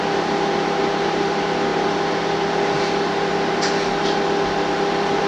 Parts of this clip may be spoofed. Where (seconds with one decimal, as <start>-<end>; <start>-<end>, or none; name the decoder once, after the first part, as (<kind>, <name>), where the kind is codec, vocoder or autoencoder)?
none

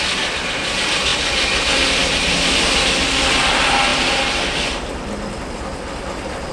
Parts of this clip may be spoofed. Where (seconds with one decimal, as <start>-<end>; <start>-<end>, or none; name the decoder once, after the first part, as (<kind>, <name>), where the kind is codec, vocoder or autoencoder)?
none

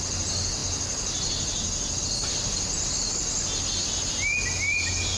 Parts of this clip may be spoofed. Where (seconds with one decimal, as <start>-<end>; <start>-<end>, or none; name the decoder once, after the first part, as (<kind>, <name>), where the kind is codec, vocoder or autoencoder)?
none

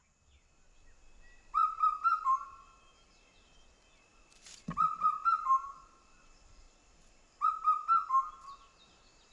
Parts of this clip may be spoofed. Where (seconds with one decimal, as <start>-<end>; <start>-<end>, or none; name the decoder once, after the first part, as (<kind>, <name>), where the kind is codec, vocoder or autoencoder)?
1.6-3.3 (vocoder, BigVGAN v2); 4.1-7.5

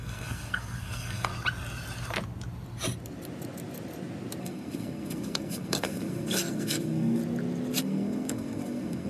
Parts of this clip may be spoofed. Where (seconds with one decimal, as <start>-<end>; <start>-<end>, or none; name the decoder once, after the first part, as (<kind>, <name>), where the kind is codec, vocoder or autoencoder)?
0.0-1.3 (codec, SNAC); 4.4-7.2; 7.8-9.1

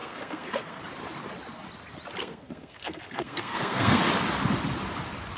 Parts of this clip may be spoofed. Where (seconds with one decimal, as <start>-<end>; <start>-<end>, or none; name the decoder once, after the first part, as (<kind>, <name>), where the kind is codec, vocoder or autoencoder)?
0.0-0.8 (codec, SNAC); 2.2-4.0